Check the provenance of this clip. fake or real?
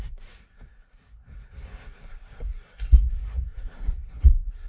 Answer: fake